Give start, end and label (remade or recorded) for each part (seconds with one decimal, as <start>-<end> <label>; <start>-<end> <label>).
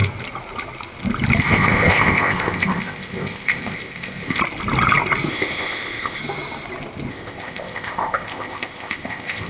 0.0-1.4 recorded; 1.4-4.4 remade; 4.4-5.3 recorded; 5.3-6.2 remade; 6.2-7.1 recorded; 7.1-9.5 remade